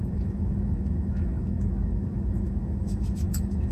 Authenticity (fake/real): fake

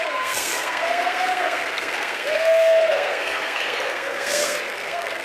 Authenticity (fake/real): fake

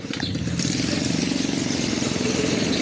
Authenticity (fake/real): fake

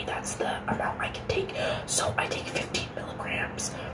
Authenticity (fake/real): real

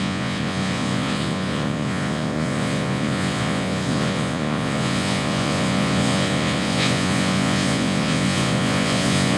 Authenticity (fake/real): fake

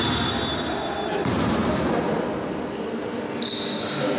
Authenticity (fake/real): real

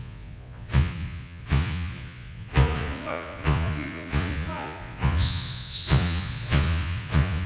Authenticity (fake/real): fake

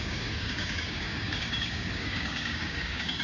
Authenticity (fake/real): fake